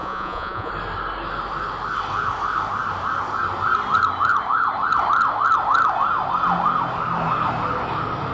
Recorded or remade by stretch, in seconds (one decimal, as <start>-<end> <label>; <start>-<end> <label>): 0.0-0.7 remade; 0.7-8.3 recorded